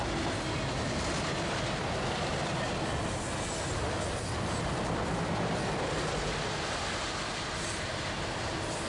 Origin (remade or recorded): recorded